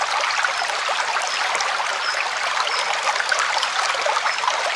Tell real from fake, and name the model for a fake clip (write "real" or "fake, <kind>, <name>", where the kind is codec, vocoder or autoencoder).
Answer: real